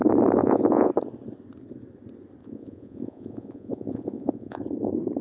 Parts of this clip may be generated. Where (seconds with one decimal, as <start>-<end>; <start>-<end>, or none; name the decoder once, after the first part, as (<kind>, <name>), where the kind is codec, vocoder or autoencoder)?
0.4-0.9 (vocoder, Vocos); 2.4-4.6

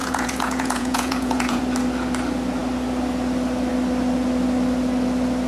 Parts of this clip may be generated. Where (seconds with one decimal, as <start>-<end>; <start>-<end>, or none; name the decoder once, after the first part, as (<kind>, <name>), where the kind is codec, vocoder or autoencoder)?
0.0-1.6 (vocoder, Vocos)